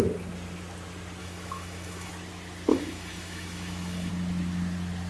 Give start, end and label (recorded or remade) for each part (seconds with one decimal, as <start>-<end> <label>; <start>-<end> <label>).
0.0-1.2 recorded; 1.2-2.1 remade; 2.1-2.7 recorded; 2.7-4.1 remade; 4.1-5.1 recorded